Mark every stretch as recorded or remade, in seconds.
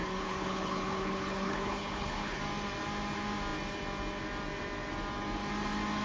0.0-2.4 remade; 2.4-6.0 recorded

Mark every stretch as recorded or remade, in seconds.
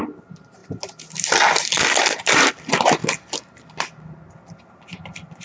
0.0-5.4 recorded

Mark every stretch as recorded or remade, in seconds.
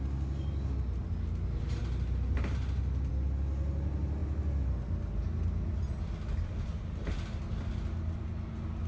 0.0-8.9 recorded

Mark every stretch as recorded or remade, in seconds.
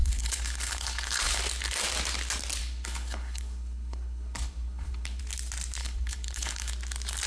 0.0-1.4 remade; 1.4-2.6 recorded; 2.6-5.2 remade; 5.2-5.8 recorded; 5.8-6.7 remade; 6.7-7.3 recorded